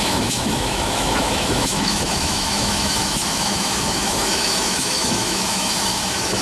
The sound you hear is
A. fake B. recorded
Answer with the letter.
A